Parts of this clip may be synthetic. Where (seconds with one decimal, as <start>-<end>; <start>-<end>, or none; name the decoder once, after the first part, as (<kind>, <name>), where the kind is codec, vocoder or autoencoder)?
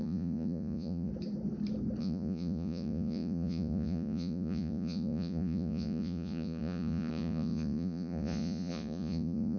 0.0-1.1 (vocoder, Vocos); 2.0-9.6